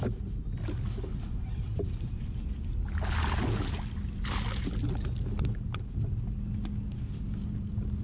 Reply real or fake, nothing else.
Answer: real